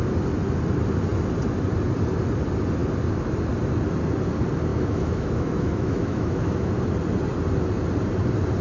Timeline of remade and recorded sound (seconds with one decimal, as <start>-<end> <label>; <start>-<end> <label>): 0.0-4.7 recorded; 4.7-6.7 remade; 6.7-8.6 recorded